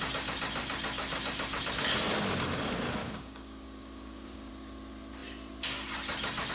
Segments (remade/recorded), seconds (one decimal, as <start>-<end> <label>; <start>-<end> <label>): 0.0-3.0 recorded; 3.0-4.5 remade; 4.5-6.5 recorded